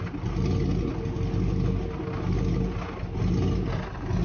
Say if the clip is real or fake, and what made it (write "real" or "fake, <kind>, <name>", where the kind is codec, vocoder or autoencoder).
real